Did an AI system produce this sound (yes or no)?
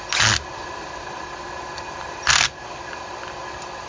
no